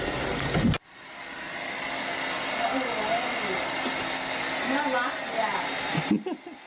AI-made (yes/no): no